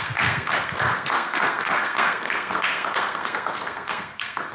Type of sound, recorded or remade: remade